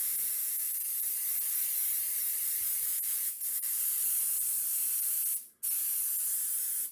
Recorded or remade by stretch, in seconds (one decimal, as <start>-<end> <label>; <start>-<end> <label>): 0.0-0.9 remade; 0.9-2.9 recorded; 2.9-3.8 remade; 3.8-6.9 recorded